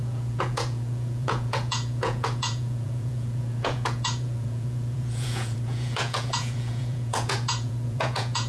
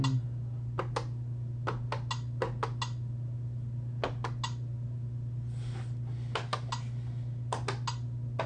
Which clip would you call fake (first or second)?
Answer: first